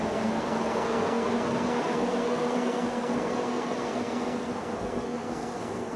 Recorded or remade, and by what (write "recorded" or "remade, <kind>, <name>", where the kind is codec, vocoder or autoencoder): remade, codec, SNAC